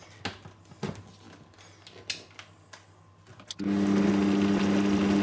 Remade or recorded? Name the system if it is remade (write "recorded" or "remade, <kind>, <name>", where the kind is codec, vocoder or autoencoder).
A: recorded